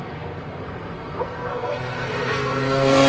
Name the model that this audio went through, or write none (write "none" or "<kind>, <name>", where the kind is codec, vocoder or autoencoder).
codec, SNAC